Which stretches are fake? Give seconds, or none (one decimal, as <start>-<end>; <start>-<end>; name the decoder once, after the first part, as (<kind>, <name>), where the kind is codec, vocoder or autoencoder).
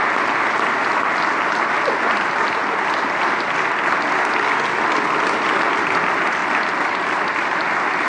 none